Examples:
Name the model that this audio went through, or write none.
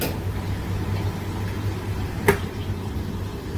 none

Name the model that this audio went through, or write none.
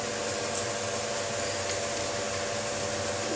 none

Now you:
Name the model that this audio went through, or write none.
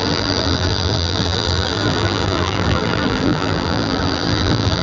vocoder, BigVGAN v2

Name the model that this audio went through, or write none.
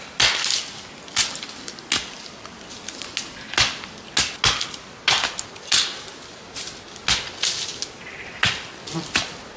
none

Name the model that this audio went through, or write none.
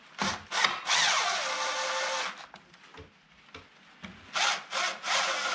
none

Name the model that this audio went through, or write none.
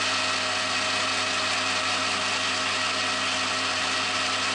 none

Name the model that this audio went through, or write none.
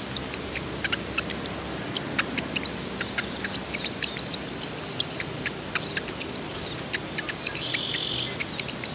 none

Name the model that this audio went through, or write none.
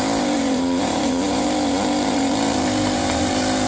vocoder, BigVGAN v2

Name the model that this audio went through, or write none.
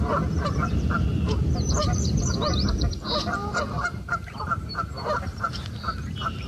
vocoder, BigVGAN v2